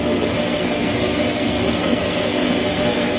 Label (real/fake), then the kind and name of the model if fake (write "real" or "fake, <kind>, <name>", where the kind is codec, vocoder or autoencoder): fake, codec, SNAC